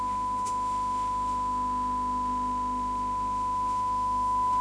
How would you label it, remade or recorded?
remade